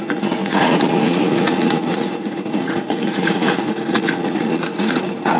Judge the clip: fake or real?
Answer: fake